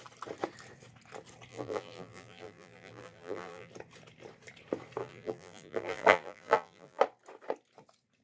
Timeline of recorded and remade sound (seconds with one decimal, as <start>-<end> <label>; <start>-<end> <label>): 0.0-1.5 recorded; 1.5-3.7 remade; 3.7-5.0 recorded; 5.0-7.0 remade; 7.0-8.2 recorded